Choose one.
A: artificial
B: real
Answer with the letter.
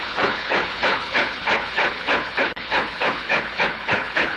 A